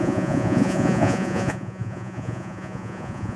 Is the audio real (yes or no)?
no